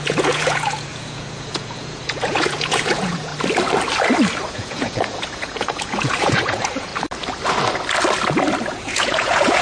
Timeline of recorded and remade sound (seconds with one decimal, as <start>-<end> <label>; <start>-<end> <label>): 0.0-3.3 remade; 3.3-4.5 recorded; 4.5-6.9 remade; 6.9-8.7 recorded; 8.7-9.6 remade